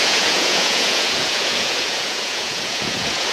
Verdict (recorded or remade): remade